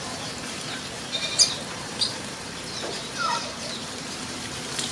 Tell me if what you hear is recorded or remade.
remade